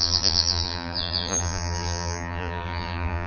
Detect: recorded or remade remade